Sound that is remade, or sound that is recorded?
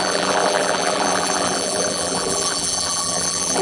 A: remade